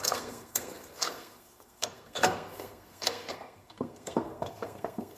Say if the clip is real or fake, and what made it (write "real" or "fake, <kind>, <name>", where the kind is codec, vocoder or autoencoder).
fake, codec, SNAC